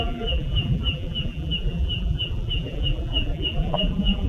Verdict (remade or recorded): remade